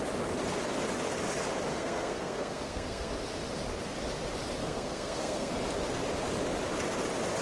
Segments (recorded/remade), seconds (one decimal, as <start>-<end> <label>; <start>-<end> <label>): 0.0-1.7 recorded; 1.7-3.1 remade; 3.1-4.6 recorded; 4.6-5.5 remade; 5.5-7.4 recorded